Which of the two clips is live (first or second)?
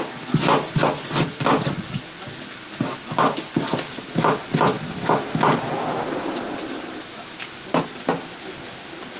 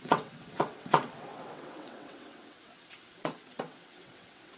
first